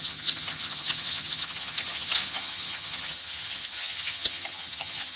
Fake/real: fake